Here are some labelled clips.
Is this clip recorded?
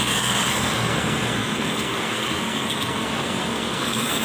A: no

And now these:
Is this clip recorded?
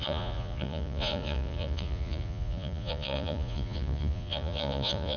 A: no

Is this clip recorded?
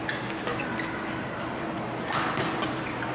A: yes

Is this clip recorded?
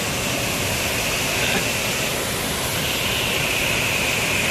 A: yes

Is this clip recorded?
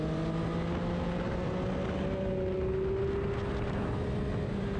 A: yes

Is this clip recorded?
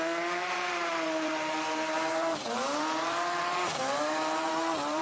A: no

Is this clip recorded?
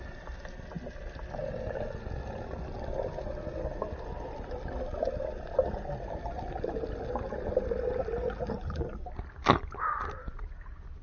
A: yes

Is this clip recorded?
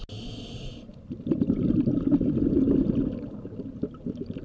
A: yes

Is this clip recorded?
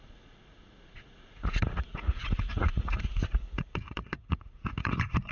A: no